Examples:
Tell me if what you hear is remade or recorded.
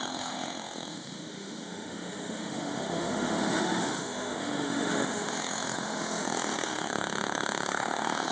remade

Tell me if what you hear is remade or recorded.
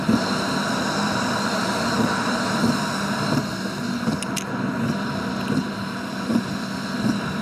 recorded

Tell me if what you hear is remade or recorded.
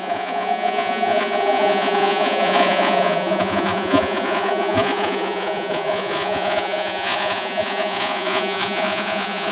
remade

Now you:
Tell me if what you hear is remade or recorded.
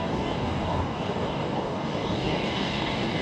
remade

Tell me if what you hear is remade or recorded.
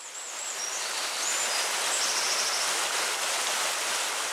recorded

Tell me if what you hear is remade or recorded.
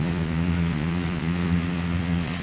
remade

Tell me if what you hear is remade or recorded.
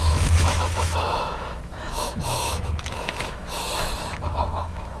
remade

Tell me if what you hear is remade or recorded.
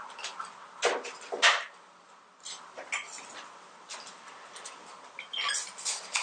recorded